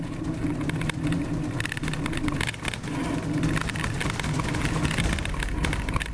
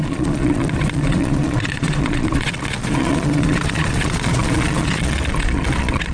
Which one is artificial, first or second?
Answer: second